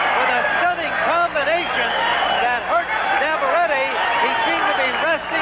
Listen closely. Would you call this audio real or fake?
real